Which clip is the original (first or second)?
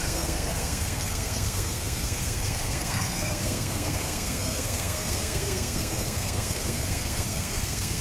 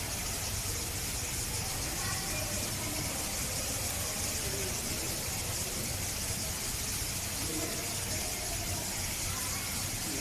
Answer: second